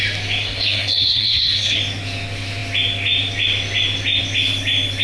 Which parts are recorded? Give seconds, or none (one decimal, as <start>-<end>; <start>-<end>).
0.0-0.4; 1.8-5.0